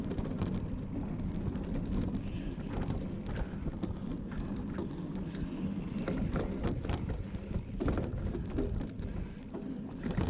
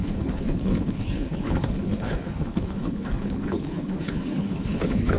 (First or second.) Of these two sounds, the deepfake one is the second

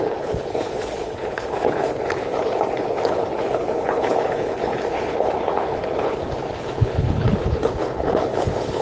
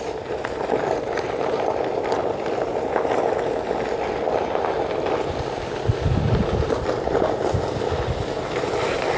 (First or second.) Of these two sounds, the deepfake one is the first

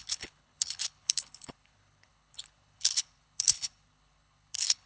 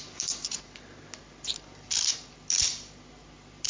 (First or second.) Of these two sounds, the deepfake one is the first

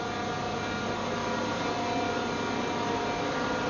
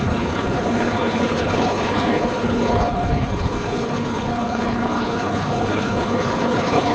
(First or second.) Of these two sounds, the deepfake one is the second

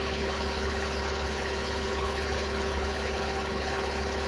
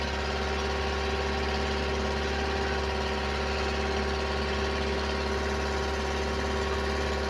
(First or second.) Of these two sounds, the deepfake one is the first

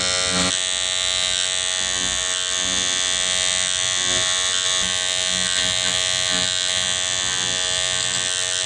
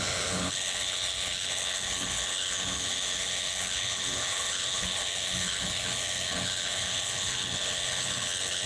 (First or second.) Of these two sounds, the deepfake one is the second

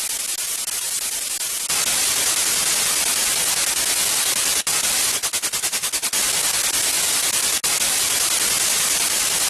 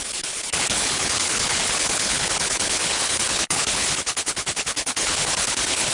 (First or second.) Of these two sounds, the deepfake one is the second